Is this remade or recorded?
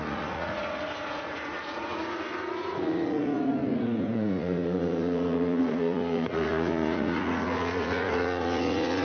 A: remade